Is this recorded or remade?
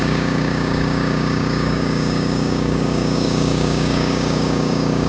remade